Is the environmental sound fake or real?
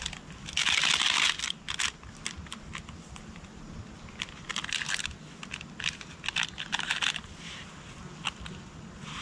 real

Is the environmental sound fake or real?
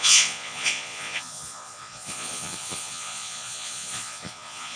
fake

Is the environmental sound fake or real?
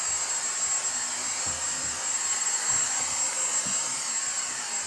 real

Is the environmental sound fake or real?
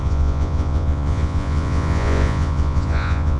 fake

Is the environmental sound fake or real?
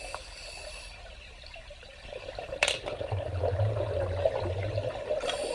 real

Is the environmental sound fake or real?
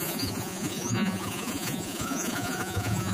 fake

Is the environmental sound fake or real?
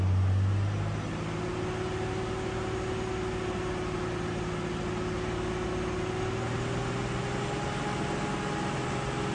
real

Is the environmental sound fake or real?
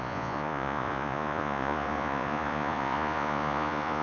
fake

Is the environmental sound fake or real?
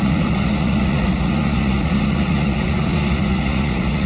fake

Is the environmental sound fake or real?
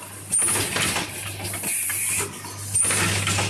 real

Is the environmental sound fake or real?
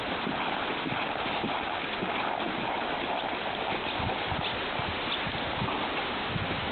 real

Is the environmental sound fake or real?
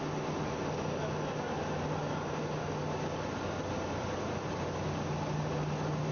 real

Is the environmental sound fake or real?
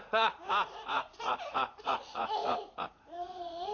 fake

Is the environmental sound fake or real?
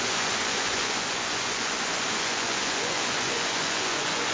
fake